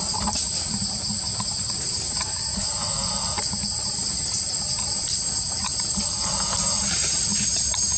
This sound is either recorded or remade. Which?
remade